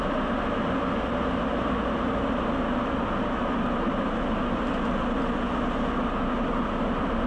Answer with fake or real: real